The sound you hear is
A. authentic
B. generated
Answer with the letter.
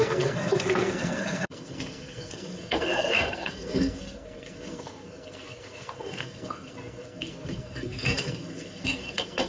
B